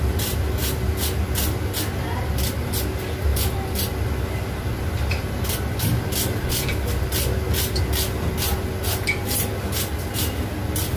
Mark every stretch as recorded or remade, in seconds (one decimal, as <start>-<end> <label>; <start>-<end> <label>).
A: 0.0-11.0 recorded